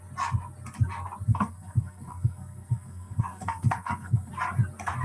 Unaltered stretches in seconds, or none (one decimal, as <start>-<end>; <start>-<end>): 0.0-1.3; 4.3-5.0